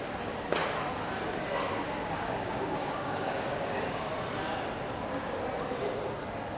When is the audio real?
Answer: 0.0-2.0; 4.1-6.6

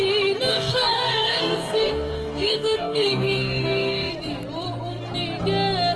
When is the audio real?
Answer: 0.0-0.5; 4.1-6.0

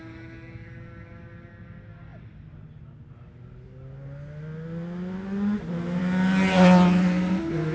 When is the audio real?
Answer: 0.0-7.7